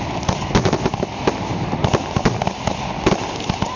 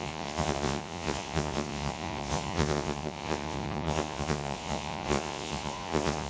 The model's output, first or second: second